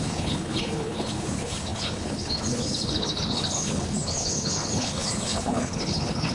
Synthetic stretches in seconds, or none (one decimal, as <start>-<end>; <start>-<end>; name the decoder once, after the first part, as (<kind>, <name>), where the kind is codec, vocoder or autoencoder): 0.0-6.3 (codec, HILCodec)